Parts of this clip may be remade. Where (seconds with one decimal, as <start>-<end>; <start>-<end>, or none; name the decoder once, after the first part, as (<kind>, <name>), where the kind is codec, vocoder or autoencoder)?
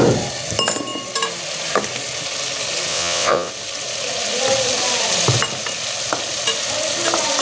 2.9-3.5 (vocoder, WaveNeXt)